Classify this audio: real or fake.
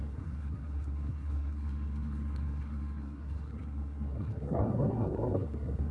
fake